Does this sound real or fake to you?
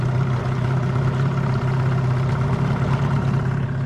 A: real